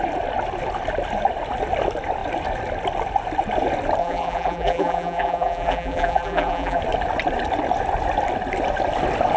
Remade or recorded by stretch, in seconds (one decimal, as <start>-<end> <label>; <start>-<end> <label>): 0.0-4.0 recorded; 4.0-6.8 remade; 6.8-9.4 recorded